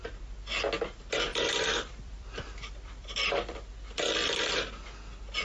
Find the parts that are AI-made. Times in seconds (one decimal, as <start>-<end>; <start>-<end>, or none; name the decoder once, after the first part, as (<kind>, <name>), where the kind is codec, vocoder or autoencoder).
1.3-4.5 (vocoder, BigVGAN v2)